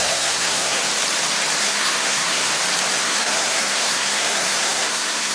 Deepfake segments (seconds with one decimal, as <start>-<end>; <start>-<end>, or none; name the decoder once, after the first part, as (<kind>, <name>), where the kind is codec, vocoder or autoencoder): 0.0-0.8 (codec, SNAC); 1.6-2.5; 3.0-5.3